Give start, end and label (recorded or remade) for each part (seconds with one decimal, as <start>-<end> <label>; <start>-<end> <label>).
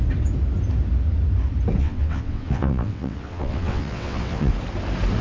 0.0-1.8 recorded; 1.8-4.5 remade; 4.5-5.2 recorded